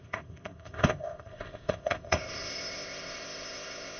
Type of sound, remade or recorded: remade